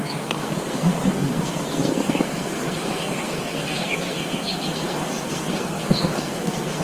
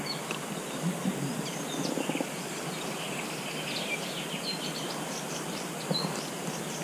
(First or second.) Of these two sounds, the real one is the second